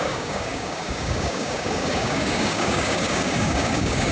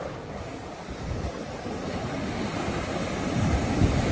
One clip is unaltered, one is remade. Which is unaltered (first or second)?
second